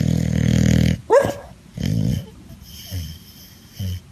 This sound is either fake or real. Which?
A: real